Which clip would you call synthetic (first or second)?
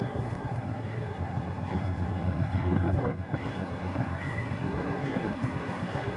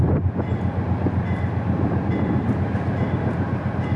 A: first